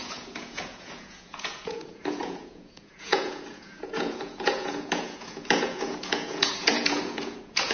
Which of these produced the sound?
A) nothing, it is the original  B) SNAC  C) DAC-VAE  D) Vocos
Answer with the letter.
D